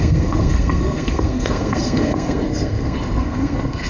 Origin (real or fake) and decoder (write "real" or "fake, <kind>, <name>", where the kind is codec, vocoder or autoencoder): fake, codec, SNAC